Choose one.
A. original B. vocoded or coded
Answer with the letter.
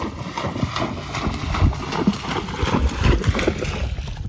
A